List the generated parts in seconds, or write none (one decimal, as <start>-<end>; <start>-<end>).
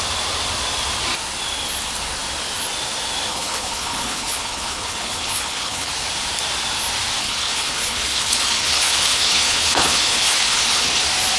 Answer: 3.3-5.9; 7.2-11.0